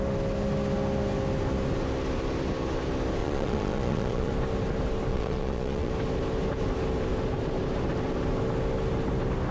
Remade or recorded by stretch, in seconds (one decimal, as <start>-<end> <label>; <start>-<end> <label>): 0.0-3.2 recorded; 3.2-4.3 remade; 4.3-5.1 recorded; 5.1-5.9 remade; 5.9-9.5 recorded